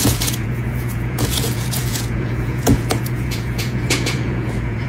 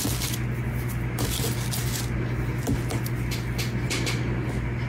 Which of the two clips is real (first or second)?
second